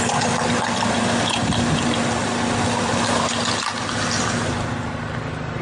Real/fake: real